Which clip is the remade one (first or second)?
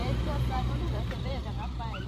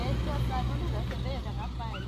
first